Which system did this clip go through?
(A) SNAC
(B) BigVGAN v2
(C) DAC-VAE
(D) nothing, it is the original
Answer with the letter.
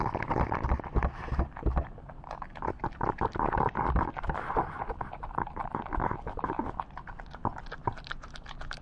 D